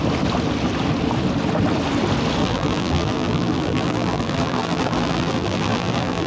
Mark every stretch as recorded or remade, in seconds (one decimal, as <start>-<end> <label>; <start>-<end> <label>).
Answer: 0.0-2.4 recorded; 2.4-6.3 remade